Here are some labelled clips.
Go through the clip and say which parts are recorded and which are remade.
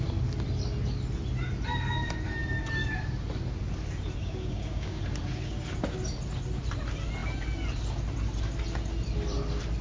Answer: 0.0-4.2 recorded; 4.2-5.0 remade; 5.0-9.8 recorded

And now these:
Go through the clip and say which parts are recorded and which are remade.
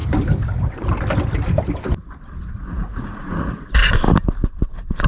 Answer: 0.0-2.4 recorded; 2.4-3.8 remade; 3.8-5.1 recorded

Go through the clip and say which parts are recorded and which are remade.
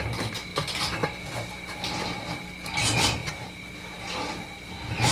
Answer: 0.0-5.1 recorded